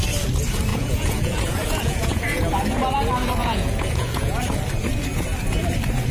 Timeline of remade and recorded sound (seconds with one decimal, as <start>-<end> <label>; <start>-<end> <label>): 0.0-0.7 recorded; 0.7-2.4 remade; 2.4-3.4 recorded; 3.4-4.4 remade; 4.4-6.1 recorded